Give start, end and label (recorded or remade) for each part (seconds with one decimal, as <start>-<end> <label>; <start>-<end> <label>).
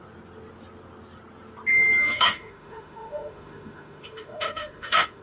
0.0-2.0 recorded; 2.0-5.2 remade